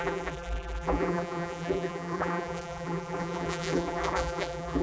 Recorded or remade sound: remade